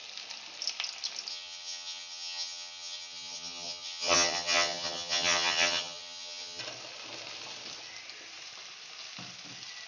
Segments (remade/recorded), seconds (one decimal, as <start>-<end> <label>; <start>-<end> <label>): 0.0-1.3 recorded; 1.3-6.6 remade; 6.6-9.9 recorded